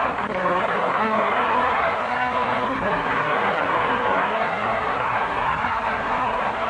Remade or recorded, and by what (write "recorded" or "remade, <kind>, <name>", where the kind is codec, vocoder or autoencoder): remade, codec, SNAC